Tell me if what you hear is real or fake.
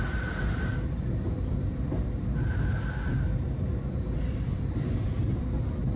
real